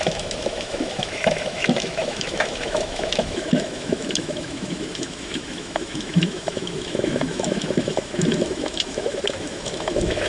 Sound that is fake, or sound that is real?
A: fake